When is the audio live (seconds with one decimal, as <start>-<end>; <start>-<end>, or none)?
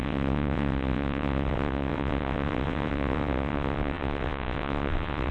none